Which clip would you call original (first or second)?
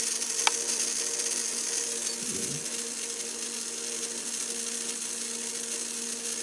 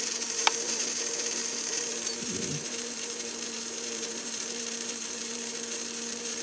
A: first